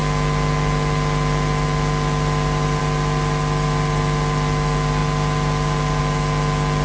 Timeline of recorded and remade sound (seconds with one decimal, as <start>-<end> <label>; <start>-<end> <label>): 0.0-6.8 recorded